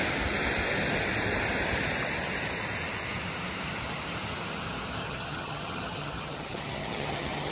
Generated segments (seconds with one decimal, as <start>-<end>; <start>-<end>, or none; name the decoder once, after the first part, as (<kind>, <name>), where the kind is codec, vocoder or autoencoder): 5.0-7.5 (vocoder, HiFi-GAN)

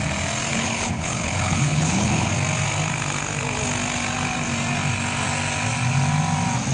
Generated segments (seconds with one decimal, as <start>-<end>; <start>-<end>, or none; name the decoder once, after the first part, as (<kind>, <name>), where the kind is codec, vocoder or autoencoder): 0.5-2.3 (codec, HILCodec)

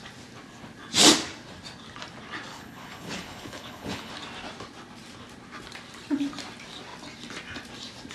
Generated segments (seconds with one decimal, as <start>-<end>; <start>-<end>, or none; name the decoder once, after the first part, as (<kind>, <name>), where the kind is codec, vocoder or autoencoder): 2.5-4.1 (codec, HILCodec)

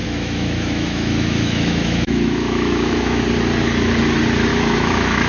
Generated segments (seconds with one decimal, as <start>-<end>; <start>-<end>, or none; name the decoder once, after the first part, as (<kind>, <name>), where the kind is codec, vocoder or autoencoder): 0.0-3.2 (autoencoder, DAC-VAE); 4.5-5.3